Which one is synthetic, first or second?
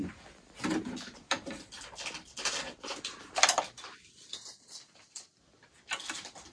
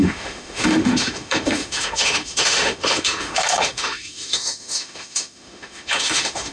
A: second